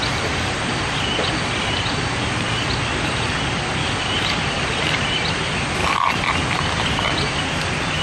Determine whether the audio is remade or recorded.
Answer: recorded